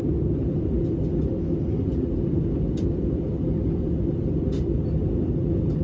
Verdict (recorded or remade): recorded